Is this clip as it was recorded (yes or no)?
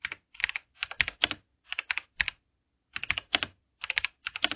yes